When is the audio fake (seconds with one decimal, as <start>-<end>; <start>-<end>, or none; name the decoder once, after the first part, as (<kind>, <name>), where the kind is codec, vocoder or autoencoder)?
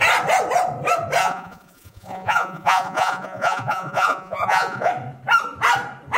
1.2-4.9 (vocoder, Vocos)